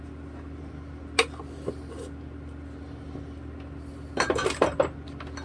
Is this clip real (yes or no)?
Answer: yes